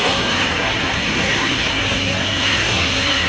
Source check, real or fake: fake